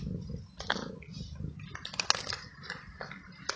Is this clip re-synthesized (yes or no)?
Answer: no